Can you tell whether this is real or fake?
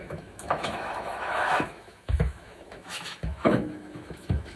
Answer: fake